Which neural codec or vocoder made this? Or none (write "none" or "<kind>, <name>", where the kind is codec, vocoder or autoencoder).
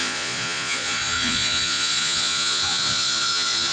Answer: vocoder, Vocos